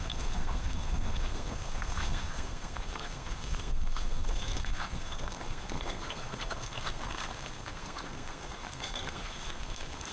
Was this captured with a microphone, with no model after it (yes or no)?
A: no